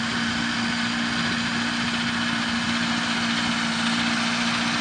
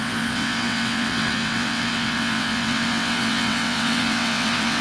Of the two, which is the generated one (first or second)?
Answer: second